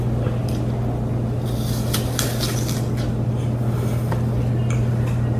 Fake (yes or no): no